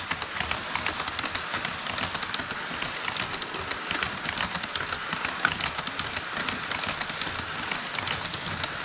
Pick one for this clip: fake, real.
real